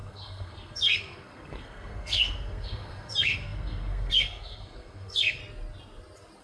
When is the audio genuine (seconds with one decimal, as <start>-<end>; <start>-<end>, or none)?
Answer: 5.4-6.4